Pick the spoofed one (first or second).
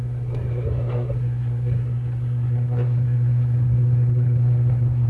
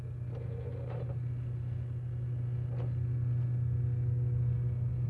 first